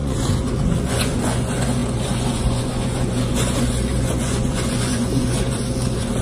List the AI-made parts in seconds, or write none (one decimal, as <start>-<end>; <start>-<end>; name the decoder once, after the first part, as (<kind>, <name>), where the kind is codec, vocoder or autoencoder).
0.0-6.2 (vocoder, Vocos)